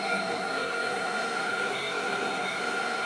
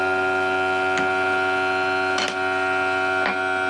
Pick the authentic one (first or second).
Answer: second